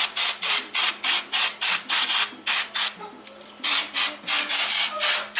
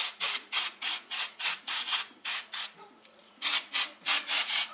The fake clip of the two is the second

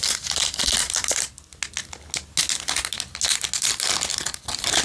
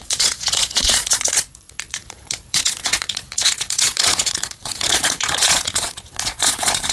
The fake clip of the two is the second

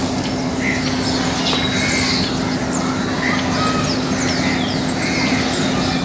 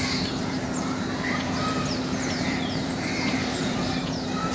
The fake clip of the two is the second